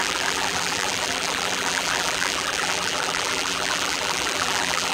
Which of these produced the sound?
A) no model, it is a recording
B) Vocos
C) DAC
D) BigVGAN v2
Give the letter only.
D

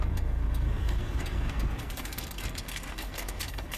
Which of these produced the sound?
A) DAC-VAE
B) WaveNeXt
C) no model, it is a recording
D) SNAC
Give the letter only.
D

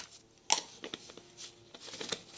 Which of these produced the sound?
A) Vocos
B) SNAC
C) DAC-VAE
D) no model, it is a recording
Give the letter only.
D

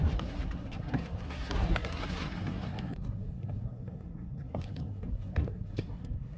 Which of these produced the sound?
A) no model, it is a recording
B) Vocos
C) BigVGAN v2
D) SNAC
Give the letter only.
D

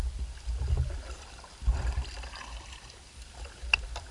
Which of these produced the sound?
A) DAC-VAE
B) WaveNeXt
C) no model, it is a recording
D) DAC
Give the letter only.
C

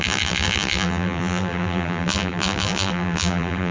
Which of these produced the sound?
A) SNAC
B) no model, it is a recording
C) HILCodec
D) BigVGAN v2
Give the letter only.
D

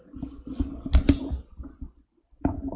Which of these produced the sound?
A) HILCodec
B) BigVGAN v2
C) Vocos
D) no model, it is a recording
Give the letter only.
D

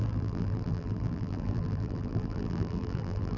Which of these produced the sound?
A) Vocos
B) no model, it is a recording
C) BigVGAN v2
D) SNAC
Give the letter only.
C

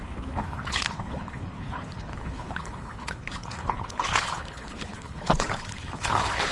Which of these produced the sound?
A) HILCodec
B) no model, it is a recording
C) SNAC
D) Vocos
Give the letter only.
A